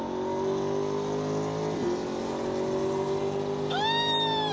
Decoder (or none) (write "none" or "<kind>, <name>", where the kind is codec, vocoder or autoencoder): none